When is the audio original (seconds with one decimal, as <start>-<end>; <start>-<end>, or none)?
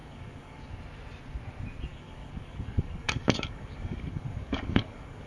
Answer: 0.7-1.9